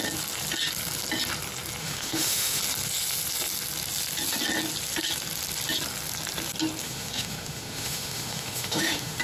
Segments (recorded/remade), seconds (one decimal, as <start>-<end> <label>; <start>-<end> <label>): 0.0-1.8 recorded; 1.8-2.6 remade; 2.6-6.8 recorded; 6.8-9.2 remade